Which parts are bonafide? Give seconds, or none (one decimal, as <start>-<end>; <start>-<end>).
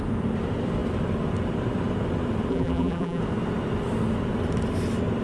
0.0-2.5; 3.2-5.2